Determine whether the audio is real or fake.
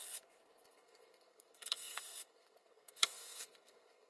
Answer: fake